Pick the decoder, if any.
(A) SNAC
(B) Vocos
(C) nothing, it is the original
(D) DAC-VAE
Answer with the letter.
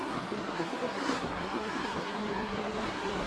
A